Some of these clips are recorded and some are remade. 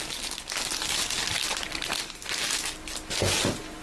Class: recorded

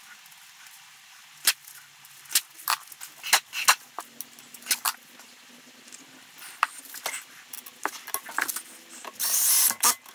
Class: recorded